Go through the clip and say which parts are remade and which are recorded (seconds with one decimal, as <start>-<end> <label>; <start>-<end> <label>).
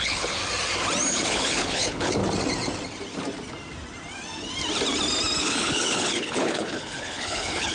0.0-0.4 remade; 0.4-1.1 recorded; 1.1-2.2 remade; 2.2-5.4 recorded; 5.4-7.7 remade